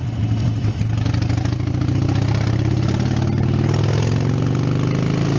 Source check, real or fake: real